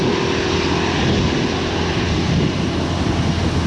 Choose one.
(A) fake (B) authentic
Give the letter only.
B